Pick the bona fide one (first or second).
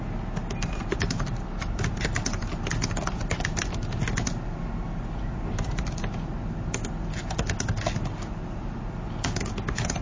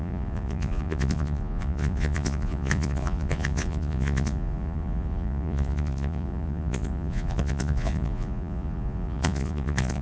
first